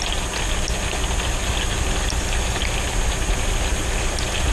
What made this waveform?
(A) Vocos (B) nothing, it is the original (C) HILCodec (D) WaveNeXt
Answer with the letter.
B